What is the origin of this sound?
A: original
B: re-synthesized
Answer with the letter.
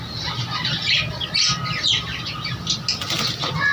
A